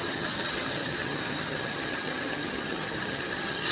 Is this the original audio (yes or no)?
no